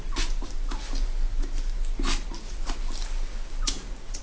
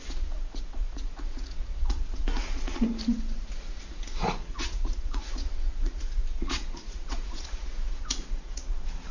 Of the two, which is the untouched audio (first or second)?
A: first